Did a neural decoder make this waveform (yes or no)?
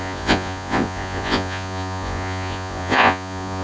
yes